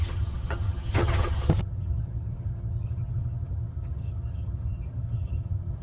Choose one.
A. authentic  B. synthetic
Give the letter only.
B